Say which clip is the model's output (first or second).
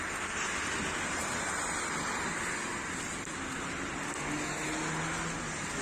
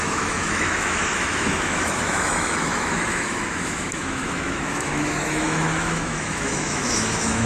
second